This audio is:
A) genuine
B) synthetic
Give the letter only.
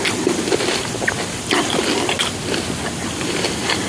B